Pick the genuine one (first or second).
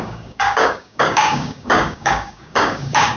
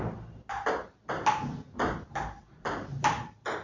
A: second